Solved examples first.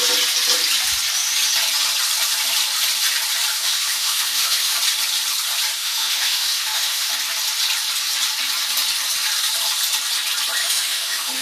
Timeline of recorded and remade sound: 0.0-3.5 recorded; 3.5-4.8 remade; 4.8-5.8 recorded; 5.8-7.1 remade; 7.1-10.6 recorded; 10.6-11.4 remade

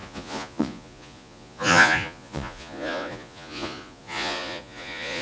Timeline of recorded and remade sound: 0.0-5.2 remade

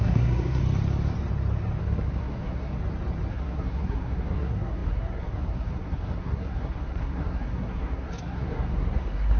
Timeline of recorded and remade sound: 0.0-0.6 remade; 0.6-1.8 recorded; 1.8-2.7 remade; 2.7-3.3 recorded; 3.3-9.4 remade